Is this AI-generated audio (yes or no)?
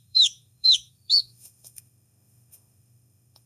yes